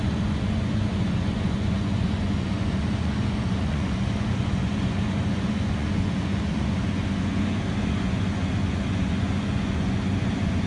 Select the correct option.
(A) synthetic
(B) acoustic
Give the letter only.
A